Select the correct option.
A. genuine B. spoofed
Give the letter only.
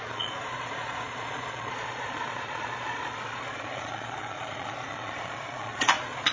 B